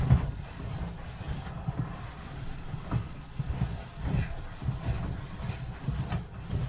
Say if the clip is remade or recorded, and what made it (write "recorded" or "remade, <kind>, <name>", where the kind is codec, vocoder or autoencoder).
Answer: recorded